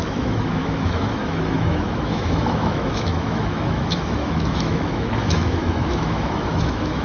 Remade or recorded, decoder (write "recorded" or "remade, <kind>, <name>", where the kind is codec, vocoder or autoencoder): remade, autoencoder, DAC-VAE